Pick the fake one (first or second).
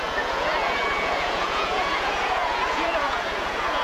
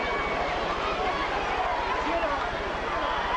first